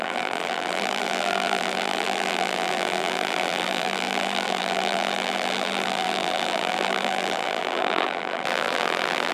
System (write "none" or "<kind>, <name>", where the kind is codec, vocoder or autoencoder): vocoder, BigVGAN v2